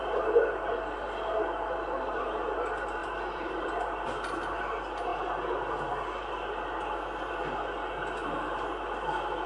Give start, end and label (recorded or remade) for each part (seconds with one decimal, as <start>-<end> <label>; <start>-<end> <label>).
0.0-3.0 recorded; 3.0-4.1 remade; 4.1-9.5 recorded